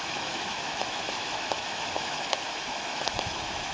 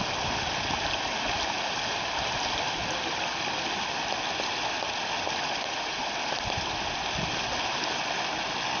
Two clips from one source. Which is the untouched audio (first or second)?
second